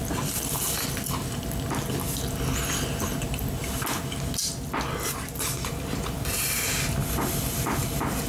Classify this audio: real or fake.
real